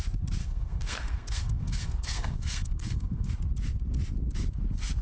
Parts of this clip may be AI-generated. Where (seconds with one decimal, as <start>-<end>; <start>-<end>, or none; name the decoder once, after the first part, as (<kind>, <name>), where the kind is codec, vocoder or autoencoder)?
0.4-3.3 (codec, SNAC)